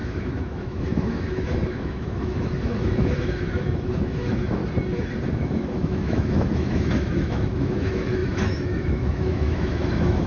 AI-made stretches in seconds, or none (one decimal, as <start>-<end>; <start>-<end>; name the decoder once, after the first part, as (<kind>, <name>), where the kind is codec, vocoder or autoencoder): 0.0-4.6 (autoencoder, DAC-VAE); 5.3-10.3